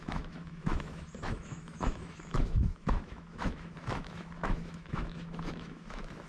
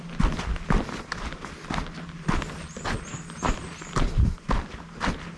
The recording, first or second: second